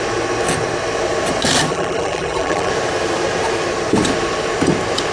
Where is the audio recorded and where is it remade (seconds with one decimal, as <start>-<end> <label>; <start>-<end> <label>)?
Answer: 0.0-1.7 recorded; 1.7-2.7 remade; 2.7-5.1 recorded